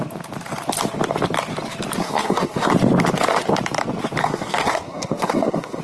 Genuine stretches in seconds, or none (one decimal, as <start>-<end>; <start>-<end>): 0.0-2.0; 2.7-4.2